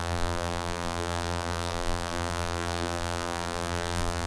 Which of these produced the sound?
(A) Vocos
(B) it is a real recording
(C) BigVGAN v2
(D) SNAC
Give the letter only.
C